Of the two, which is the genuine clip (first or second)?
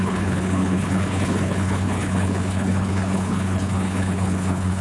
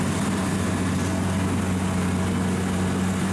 second